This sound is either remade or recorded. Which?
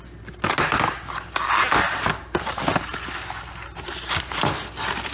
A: recorded